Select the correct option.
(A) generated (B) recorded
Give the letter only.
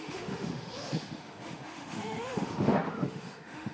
A